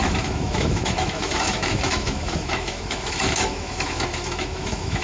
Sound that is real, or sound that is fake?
fake